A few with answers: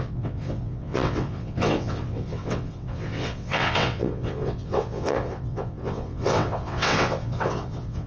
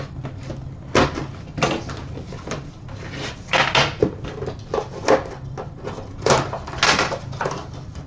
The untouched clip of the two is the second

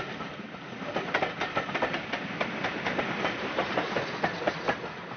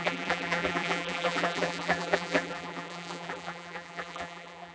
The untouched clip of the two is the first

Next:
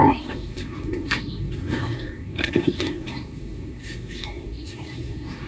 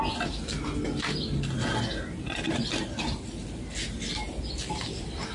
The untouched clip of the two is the second